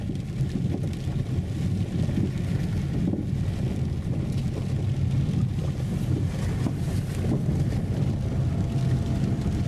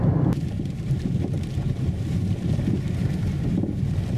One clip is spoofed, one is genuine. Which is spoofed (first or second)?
second